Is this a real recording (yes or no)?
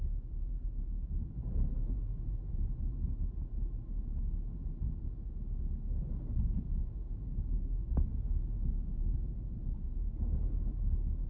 yes